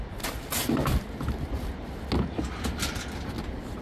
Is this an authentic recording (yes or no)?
yes